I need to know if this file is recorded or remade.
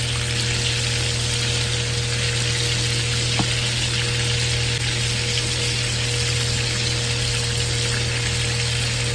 recorded